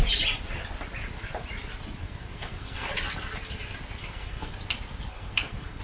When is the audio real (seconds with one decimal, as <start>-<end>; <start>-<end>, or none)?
0.0-2.0; 2.9-4.0; 4.5-5.1